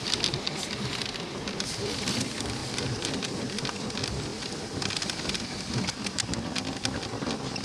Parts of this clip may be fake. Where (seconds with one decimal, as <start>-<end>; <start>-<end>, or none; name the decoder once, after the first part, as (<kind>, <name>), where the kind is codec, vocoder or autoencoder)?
2.6-3.1 (vocoder, BigVGAN v2)